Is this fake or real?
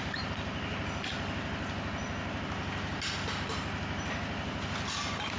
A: real